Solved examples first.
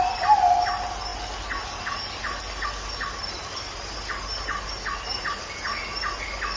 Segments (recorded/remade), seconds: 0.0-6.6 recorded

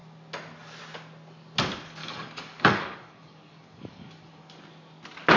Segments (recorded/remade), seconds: 0.0-2.0 recorded; 2.0-4.6 remade; 4.6-5.4 recorded

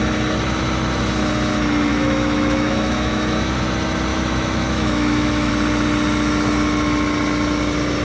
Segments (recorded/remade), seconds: 0.0-1.9 recorded; 1.9-3.6 remade; 3.6-4.1 recorded; 4.1-5.5 remade; 5.5-8.0 recorded

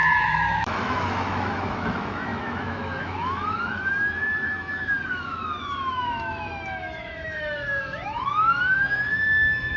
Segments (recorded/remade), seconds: 0.0-9.8 remade

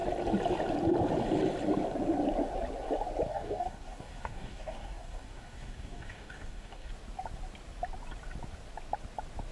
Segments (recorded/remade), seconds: 0.0-3.3 recorded; 3.3-6.9 remade; 6.9-9.5 recorded